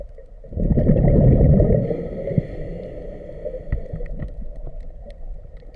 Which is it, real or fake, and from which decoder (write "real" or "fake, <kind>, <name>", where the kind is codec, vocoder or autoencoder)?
real